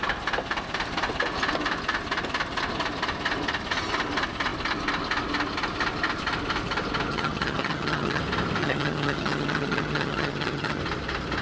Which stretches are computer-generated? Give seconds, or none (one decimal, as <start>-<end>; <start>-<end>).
7.1-8.2; 8.6-10.8